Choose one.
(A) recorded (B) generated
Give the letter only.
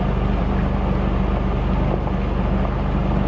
A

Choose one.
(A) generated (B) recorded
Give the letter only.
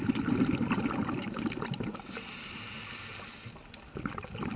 B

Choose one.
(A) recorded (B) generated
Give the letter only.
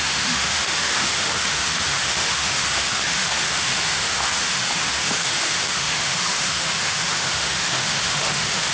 B